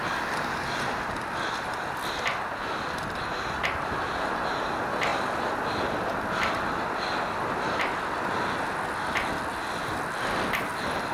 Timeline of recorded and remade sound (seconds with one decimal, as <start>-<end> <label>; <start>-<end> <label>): 0.0-11.1 recorded